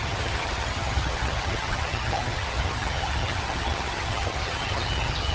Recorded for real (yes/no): no